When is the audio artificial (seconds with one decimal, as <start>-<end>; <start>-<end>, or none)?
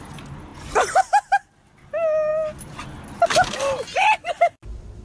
none